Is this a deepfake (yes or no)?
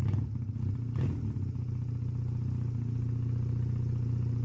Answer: no